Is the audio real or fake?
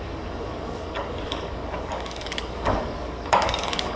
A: fake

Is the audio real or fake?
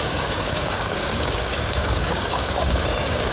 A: fake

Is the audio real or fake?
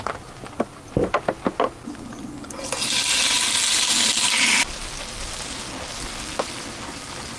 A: real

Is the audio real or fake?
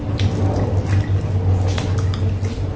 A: real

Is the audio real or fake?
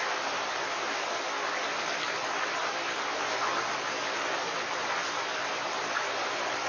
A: real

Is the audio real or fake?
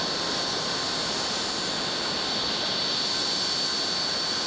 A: real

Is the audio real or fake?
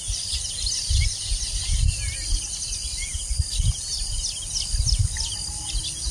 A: real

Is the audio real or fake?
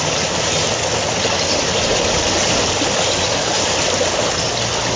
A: real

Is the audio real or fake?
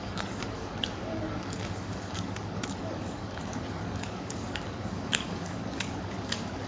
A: fake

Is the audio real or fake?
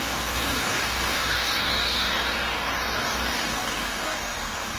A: fake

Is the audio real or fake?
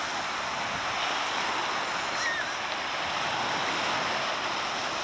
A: real